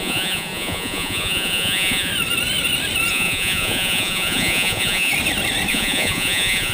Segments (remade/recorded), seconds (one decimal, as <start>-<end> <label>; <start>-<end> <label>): 0.0-2.1 remade; 2.1-3.1 recorded; 3.1-5.1 remade; 5.1-5.7 recorded; 5.7-6.7 remade